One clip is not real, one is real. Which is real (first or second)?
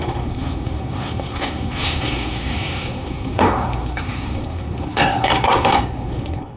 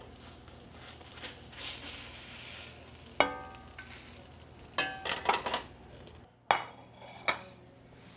second